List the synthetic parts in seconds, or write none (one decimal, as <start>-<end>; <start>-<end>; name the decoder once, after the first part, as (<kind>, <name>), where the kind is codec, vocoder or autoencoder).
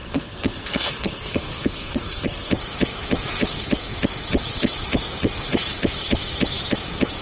0.0-2.5 (codec, SNAC)